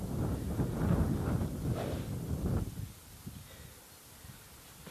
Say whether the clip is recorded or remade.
recorded